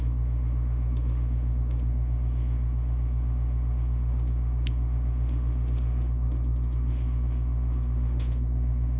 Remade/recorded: remade